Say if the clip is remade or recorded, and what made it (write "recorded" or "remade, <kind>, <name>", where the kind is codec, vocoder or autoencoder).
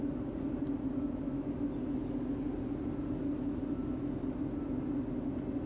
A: recorded